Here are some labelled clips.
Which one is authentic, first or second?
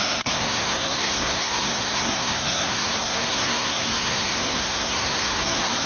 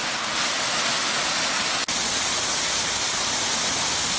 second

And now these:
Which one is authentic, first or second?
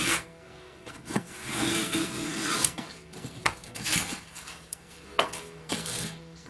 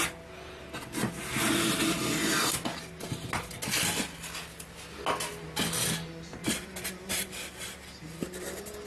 second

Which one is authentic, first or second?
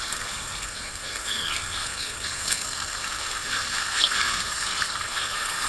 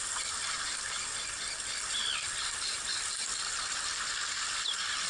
second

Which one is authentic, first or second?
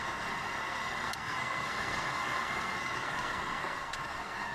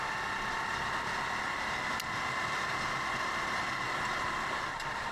second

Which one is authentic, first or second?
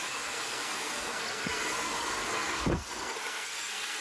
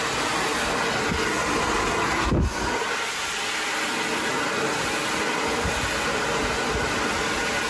second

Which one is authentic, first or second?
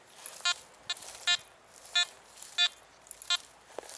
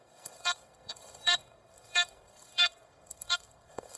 first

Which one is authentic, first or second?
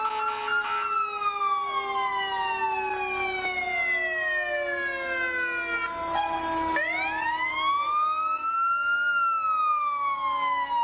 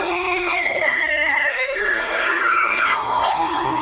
first